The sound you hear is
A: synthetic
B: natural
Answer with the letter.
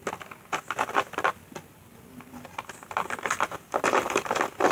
B